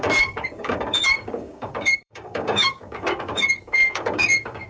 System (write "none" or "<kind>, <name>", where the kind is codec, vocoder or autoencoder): codec, DAC